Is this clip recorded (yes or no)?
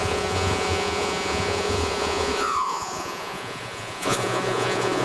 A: no